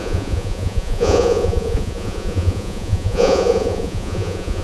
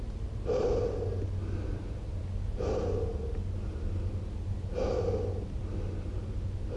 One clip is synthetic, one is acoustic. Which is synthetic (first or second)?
first